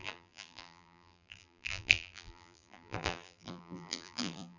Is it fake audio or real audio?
fake